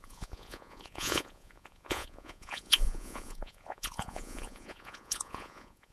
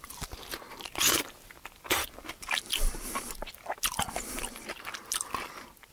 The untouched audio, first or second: second